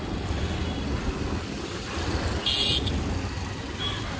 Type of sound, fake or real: real